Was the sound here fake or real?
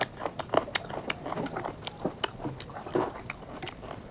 real